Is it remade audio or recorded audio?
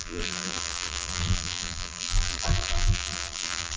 remade